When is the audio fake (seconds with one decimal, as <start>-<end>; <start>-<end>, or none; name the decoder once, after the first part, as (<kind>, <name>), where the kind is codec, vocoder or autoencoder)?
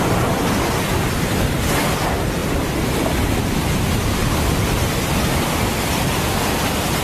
none